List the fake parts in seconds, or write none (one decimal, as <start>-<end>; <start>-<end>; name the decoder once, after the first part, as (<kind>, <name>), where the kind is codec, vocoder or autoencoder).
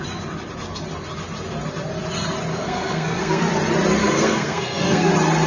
2.5-3.5 (codec, SNAC); 4.0-5.1